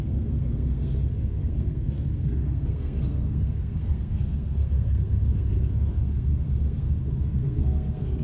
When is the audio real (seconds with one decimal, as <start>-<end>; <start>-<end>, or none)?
none